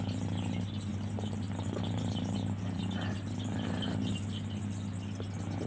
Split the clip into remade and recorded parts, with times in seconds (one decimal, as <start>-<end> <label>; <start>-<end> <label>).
0.0-0.9 recorded; 0.9-4.3 remade; 4.3-5.7 recorded